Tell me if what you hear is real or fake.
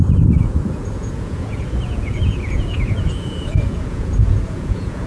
fake